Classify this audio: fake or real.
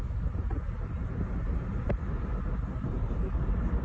real